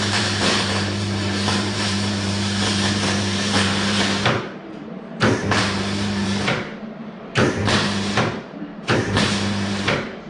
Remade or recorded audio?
remade